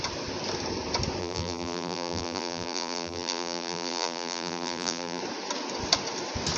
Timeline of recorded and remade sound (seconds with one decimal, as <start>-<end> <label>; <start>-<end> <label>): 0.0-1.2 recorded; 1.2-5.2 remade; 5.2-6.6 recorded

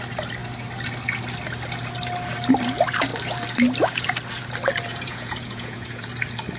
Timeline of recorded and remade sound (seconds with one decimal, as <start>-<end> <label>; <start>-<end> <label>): 0.0-4.9 recorded; 4.9-6.1 remade; 6.1-6.6 recorded

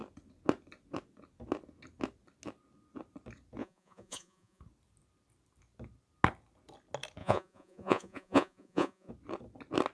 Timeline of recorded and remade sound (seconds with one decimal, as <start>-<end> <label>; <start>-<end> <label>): 0.0-3.6 recorded; 3.6-4.6 remade; 4.6-7.2 recorded; 7.2-9.1 remade; 9.1-9.9 recorded